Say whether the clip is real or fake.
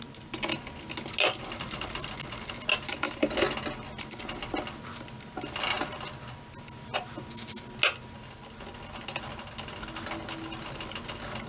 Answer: real